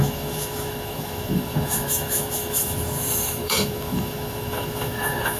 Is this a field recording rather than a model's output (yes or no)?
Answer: no